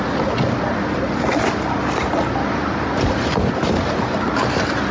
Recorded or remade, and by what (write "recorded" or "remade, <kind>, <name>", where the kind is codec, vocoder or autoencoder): recorded